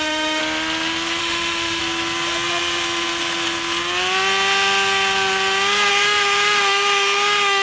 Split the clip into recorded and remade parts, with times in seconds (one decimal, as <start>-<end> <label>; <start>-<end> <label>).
0.0-0.4 remade; 0.4-1.2 recorded; 1.2-1.8 remade; 1.8-5.9 recorded; 5.9-7.6 remade